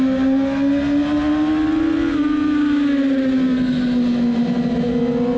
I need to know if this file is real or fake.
real